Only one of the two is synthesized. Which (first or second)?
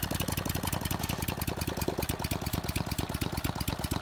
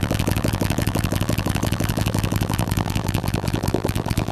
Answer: second